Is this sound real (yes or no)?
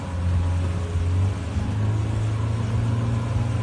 yes